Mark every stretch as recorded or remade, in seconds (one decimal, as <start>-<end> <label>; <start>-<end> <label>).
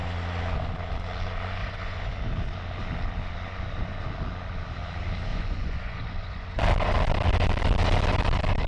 0.0-1.6 recorded; 1.6-2.1 remade; 2.1-5.3 recorded; 5.3-6.6 remade; 6.6-8.7 recorded